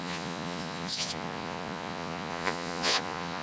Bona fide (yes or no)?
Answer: no